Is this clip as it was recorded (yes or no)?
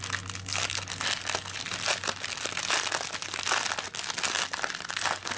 yes